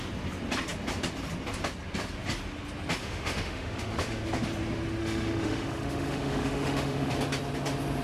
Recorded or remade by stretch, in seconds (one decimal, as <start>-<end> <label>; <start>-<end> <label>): 0.0-3.0 recorded; 3.0-4.2 remade; 4.2-5.0 recorded; 5.0-7.1 remade; 7.1-8.0 recorded